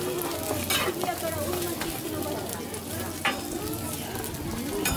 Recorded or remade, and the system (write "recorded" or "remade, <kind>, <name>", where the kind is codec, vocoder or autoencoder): recorded